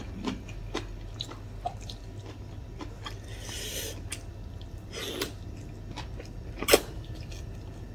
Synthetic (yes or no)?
no